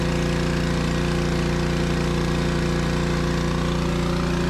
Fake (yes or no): no